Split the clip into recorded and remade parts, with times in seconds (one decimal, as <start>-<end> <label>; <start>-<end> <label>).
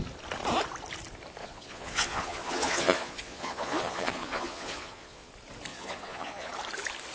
0.0-1.4 recorded; 1.4-5.3 remade; 5.3-5.7 recorded; 5.7-6.5 remade; 6.5-7.1 recorded